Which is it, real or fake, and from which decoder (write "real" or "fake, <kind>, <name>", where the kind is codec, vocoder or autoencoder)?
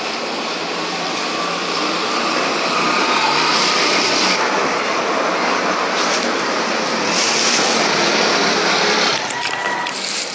fake, vocoder, BigVGAN v2